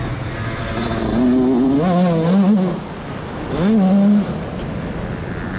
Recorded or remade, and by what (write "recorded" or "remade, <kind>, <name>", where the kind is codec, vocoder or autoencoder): recorded